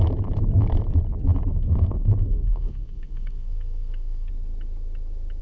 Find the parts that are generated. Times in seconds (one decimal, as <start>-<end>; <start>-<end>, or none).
1.5-4.3